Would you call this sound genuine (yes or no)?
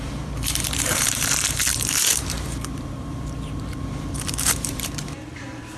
no